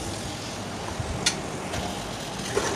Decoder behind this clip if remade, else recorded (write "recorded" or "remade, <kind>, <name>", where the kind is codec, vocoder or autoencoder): recorded